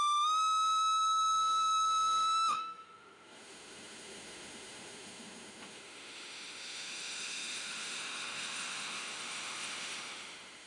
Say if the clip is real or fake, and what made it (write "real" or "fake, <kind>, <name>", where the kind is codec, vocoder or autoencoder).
fake, autoencoder, DAC-VAE